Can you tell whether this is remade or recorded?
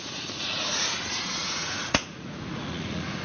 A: remade